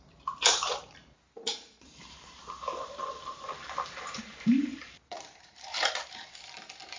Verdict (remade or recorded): remade